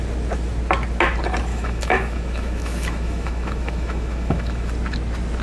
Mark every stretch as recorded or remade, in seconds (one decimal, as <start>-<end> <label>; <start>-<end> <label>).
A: 0.0-1.5 recorded; 1.5-4.7 remade; 4.7-5.4 recorded